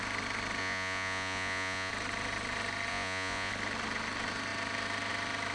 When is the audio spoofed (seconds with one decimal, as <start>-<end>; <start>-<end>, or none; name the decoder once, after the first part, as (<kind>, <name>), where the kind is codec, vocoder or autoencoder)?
0.6-1.9 (vocoder, Vocos); 2.9-3.5